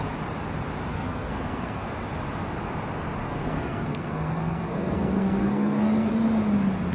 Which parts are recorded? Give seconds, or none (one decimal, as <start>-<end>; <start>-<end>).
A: 0.0-0.9; 1.9-3.2; 6.1-6.9